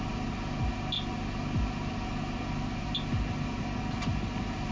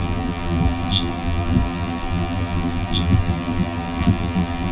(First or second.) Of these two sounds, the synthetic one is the second